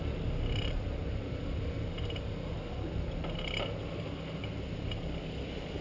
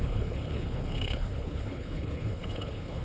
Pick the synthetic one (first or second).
second